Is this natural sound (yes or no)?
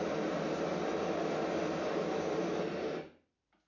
yes